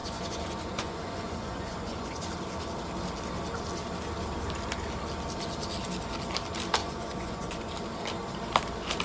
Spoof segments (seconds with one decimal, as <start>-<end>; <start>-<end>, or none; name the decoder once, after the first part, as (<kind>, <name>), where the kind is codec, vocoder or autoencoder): 0.0-2.2 (vocoder, Vocos); 6.8-7.7